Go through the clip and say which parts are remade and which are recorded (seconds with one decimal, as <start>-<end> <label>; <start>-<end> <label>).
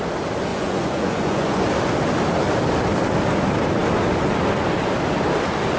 0.0-0.5 recorded; 0.5-1.6 remade; 1.6-5.8 recorded